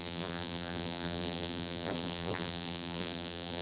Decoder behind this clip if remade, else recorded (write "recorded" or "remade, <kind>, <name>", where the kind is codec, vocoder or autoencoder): remade, vocoder, BigVGAN v2